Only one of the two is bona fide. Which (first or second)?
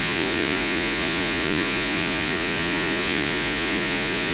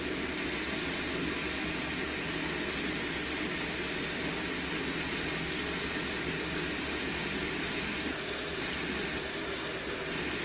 second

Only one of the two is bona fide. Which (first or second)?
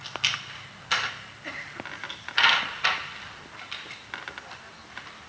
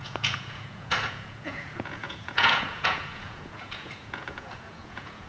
first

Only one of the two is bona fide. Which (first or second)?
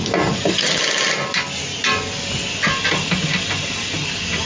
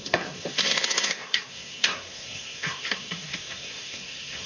first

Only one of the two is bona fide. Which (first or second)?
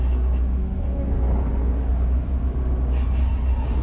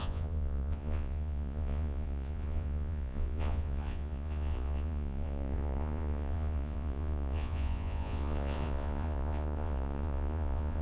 first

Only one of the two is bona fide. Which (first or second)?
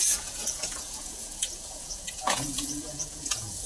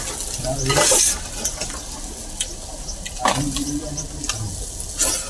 second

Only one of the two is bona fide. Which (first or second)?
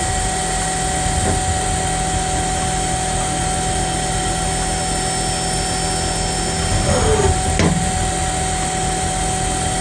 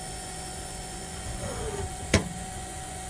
first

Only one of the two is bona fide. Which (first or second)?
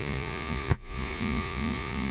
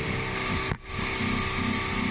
second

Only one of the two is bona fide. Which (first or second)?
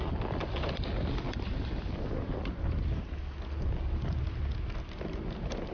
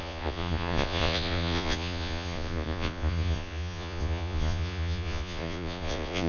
first